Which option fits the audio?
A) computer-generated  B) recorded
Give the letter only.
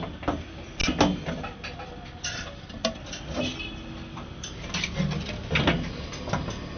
B